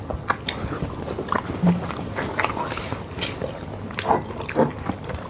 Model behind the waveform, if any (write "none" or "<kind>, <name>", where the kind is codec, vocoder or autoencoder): none